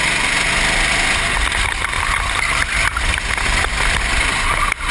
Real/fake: real